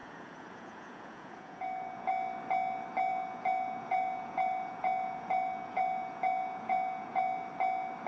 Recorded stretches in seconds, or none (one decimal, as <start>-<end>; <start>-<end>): 2.1-3.1; 7.3-8.1